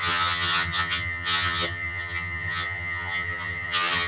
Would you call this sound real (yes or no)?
no